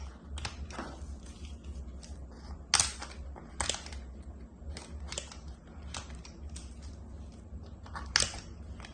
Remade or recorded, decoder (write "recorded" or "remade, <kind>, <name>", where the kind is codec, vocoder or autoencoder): recorded